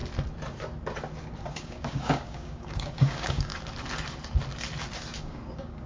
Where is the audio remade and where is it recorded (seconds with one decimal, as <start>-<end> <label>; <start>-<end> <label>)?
0.0-1.5 recorded; 1.5-3.5 remade; 3.5-5.2 recorded; 5.2-5.9 remade